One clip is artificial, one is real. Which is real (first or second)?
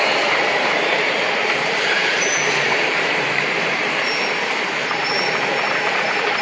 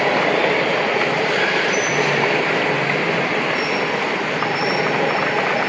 second